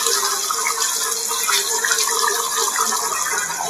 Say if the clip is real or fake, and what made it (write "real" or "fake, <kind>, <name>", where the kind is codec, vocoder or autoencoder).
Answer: real